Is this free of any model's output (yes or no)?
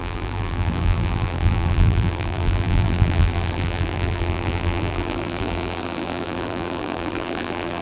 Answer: no